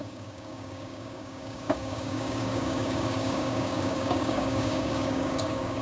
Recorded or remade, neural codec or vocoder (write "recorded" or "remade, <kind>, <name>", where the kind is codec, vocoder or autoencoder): remade, codec, DAC